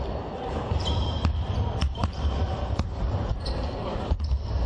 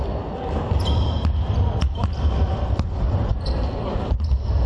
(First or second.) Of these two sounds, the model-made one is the first